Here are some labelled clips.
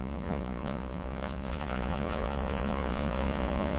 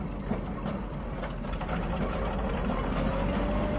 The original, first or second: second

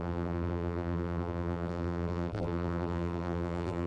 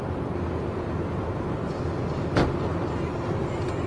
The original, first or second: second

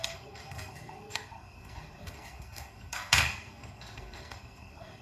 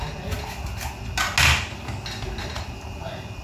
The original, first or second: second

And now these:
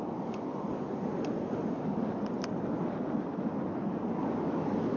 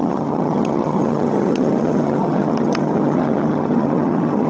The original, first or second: first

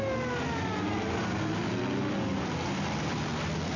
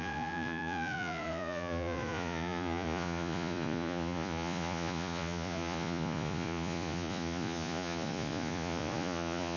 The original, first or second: first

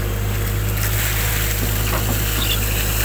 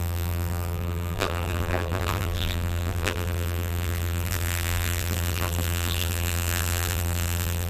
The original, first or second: first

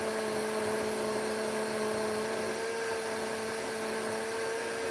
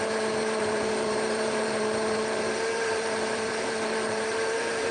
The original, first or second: first